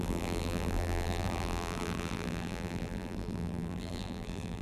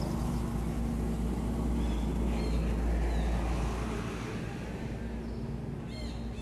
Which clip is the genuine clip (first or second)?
second